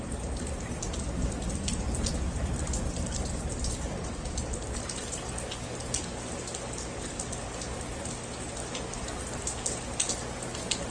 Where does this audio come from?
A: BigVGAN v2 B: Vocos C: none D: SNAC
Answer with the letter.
C